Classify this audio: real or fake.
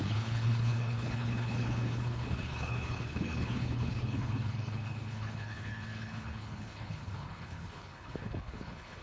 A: fake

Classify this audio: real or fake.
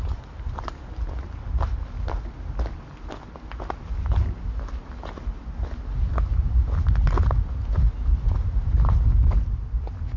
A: real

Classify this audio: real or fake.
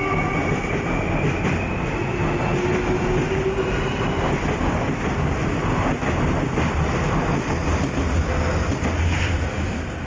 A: real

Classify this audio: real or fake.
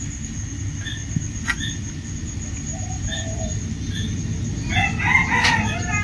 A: real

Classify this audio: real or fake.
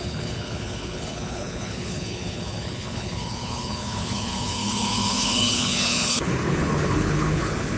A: fake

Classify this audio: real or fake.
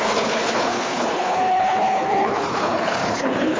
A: fake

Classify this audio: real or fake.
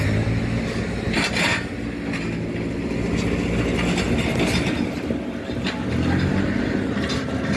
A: real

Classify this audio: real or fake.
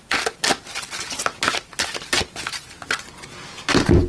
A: real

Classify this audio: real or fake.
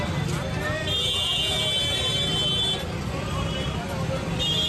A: real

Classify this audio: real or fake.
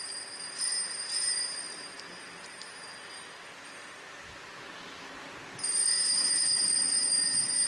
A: real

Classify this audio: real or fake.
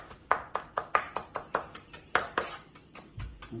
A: real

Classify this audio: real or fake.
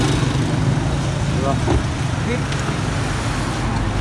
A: real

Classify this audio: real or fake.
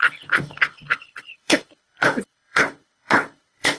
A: fake